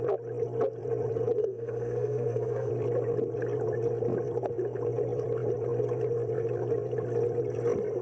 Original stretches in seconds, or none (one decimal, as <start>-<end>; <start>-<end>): 0.0-1.4; 2.7-8.0